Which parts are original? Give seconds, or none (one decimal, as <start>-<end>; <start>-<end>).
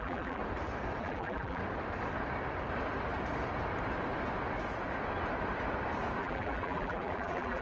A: 0.4-1.0; 1.6-6.2